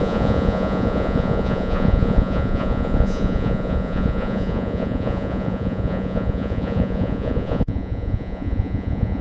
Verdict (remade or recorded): remade